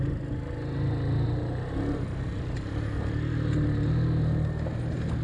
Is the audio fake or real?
real